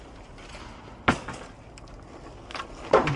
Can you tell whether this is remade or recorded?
recorded